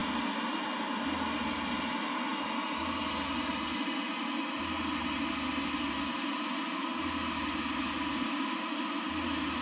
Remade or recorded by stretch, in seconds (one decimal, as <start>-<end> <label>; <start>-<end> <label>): 0.0-9.6 recorded